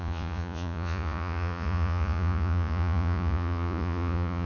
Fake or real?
fake